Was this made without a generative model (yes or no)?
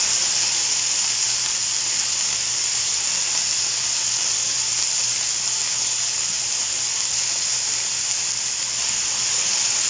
yes